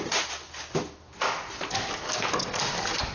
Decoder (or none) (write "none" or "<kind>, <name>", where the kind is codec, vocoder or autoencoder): none